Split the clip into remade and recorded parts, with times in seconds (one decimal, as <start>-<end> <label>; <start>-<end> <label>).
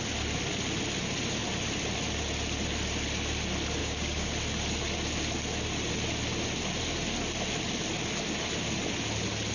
0.0-3.8 recorded; 3.8-4.3 remade; 4.3-9.5 recorded